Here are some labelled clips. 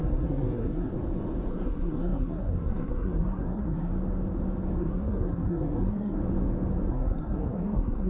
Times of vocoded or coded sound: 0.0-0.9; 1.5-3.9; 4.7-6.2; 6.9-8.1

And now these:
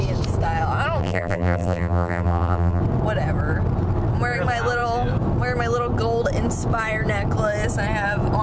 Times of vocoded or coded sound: 1.0-2.8